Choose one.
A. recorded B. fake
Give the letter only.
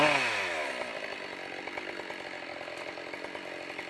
A